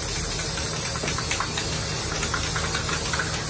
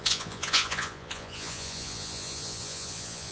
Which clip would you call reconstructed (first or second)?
second